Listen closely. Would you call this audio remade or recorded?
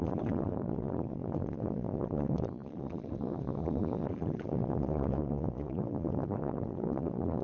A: remade